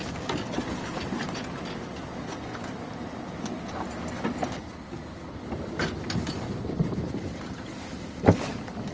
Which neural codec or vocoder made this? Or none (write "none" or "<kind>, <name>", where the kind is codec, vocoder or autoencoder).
none